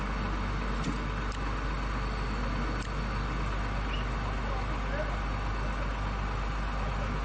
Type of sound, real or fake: real